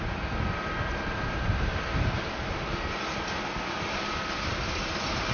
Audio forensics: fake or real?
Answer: real